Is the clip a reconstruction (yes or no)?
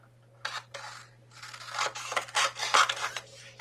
no